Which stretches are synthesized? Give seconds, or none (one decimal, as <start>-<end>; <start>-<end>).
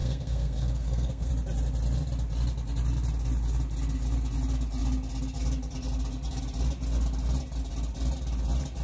0.0-1.3